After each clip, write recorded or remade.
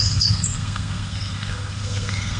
remade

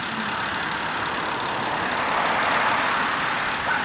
recorded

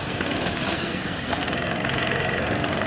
remade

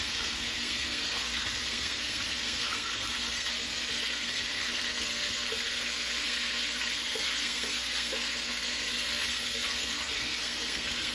remade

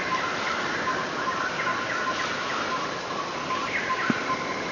recorded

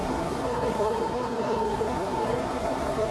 remade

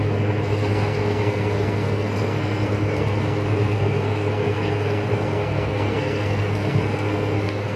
remade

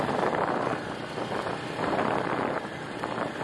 recorded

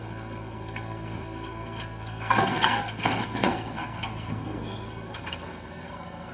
remade